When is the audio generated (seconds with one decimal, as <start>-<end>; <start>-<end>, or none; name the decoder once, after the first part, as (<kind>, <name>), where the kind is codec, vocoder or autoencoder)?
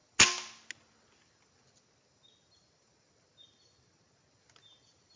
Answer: none